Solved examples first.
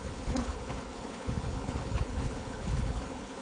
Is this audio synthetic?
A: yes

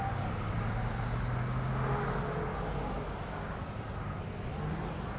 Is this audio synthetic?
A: no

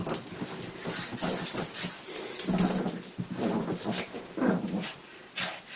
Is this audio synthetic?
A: no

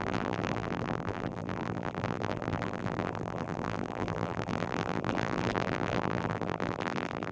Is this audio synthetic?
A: yes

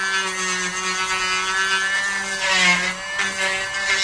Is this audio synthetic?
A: no